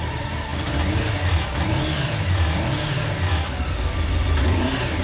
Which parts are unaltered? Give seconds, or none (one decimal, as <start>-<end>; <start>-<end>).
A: 0.0-5.0